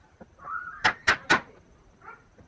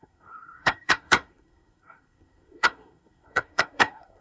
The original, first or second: first